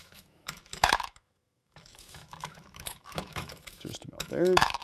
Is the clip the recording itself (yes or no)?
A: no